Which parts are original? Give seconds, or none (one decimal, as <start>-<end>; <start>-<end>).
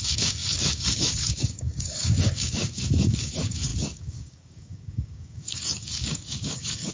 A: none